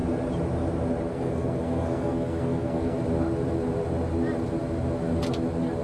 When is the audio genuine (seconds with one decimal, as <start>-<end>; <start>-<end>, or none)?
0.0-1.1; 3.0-5.8